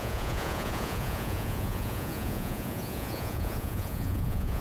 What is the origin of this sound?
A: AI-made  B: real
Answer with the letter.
A